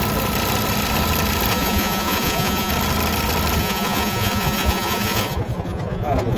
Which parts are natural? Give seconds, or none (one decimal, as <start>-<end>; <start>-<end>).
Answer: 0.0-1.5; 2.7-3.6